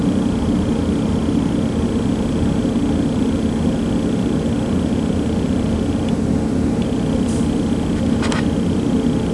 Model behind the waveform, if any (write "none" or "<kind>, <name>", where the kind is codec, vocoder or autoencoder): none